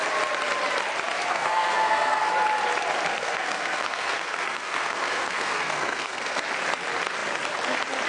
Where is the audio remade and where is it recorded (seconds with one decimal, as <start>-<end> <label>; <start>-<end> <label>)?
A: 0.0-1.3 recorded; 1.3-2.3 remade; 2.3-3.1 recorded; 3.1-6.4 remade; 6.4-8.1 recorded